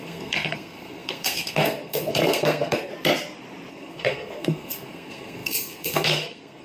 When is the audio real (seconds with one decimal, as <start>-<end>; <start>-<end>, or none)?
2.9-3.7